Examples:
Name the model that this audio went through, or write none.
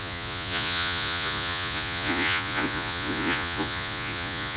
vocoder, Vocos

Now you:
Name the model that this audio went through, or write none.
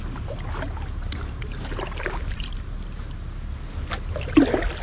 none